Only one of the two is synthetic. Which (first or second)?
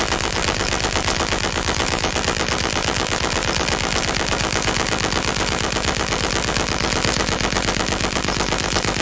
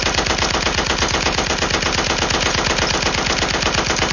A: first